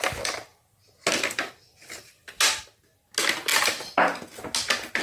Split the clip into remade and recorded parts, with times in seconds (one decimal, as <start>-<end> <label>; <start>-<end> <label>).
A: 0.0-0.5 recorded; 0.5-2.8 remade; 2.8-5.0 recorded